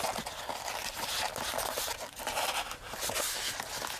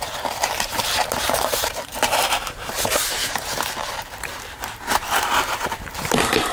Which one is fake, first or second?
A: second